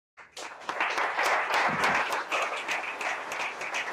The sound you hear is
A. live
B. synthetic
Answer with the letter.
A